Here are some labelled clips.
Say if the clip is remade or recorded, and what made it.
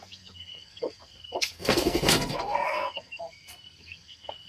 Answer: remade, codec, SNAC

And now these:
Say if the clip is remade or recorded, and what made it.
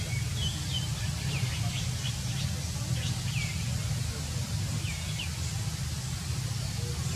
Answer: recorded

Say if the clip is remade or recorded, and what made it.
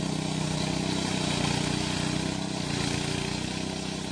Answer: recorded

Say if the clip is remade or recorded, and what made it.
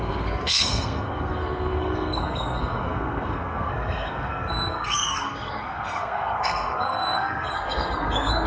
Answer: remade, codec, SNAC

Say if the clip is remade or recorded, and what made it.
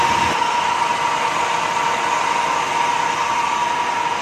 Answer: recorded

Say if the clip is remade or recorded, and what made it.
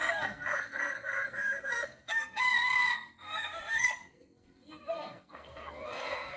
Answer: remade, codec, SNAC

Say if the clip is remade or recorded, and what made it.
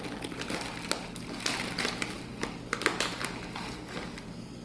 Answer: recorded